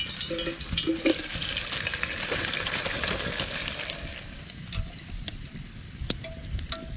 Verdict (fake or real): real